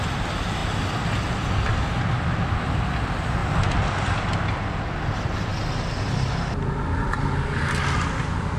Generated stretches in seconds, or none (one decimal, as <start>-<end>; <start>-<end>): none